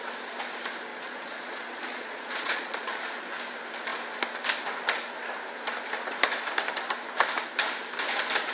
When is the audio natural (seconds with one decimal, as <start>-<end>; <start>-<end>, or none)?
0.0-0.9; 3.0-8.5